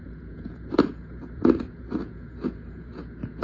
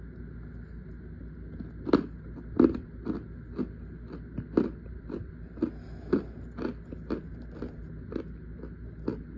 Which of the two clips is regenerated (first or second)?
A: first